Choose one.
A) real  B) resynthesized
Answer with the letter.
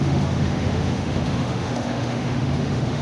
B